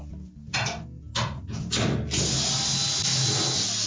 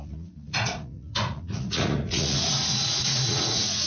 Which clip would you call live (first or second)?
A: first